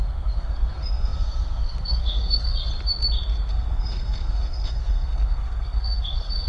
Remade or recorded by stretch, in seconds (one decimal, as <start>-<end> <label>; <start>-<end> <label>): 0.0-2.7 remade; 2.7-3.5 recorded; 3.5-6.5 remade